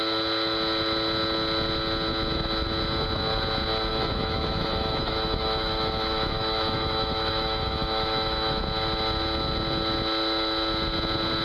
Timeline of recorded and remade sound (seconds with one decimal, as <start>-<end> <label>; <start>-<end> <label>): 0.0-3.9 recorded; 3.9-8.6 remade; 8.6-11.4 recorded